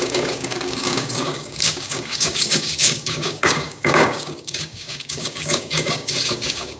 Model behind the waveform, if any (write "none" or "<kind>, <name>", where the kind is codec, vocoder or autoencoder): codec, DAC